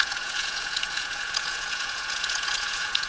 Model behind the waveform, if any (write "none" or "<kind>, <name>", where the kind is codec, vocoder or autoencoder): vocoder, Vocos